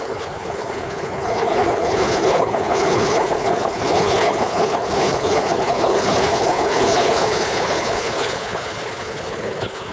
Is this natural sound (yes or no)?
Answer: no